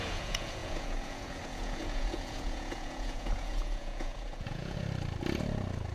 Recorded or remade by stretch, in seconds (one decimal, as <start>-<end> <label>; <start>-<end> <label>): 0.0-4.8 remade; 4.8-5.9 recorded